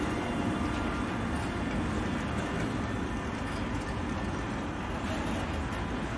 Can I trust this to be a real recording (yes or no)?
yes